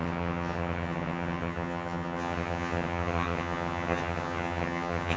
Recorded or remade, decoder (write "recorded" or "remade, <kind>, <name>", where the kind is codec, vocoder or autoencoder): remade, vocoder, HiFi-GAN